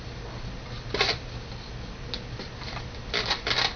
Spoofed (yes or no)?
no